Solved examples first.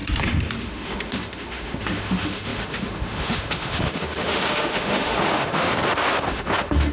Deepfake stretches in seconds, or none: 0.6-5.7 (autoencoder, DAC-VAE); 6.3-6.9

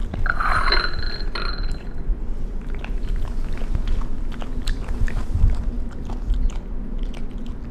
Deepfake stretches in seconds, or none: none

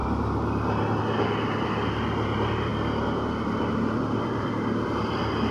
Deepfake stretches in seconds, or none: 1.0-2.7 (vocoder, BigVGAN v2); 3.7-5.5

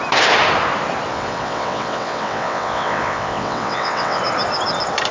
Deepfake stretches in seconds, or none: 1.1-4.2 (vocoder, WaveNeXt)

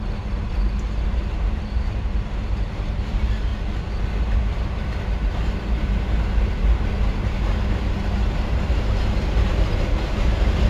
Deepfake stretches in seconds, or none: 0.0-3.5 (vocoder, BigVGAN v2); 4.0-10.7

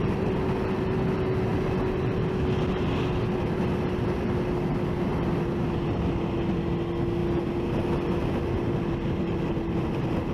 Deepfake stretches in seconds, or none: none

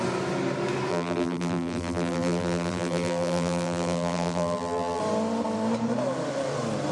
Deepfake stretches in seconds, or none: 0.9-5.0 (vocoder, BigVGAN v2)